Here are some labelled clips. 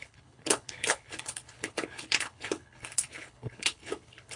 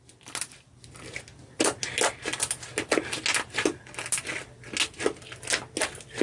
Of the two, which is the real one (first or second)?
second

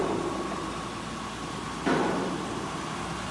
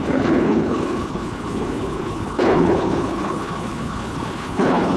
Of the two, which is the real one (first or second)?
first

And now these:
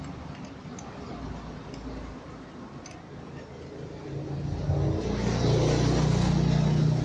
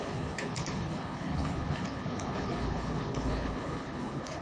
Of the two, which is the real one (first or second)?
first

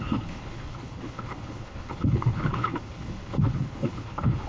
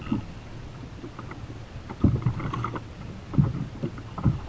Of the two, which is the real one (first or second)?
second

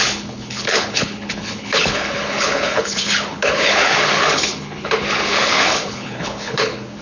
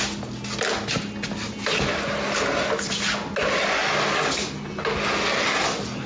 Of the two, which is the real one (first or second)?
second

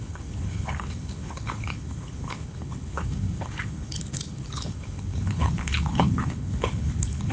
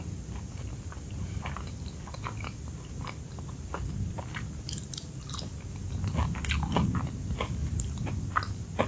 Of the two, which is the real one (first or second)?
second